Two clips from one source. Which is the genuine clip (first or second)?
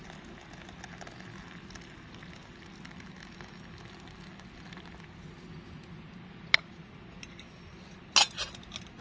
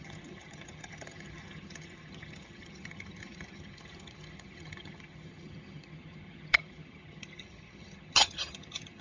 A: first